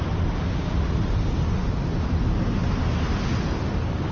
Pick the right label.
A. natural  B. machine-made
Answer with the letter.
A